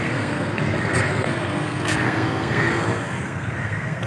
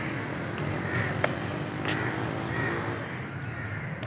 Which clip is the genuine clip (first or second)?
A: second